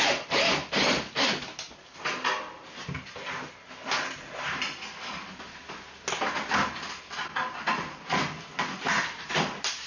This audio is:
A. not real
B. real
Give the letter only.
B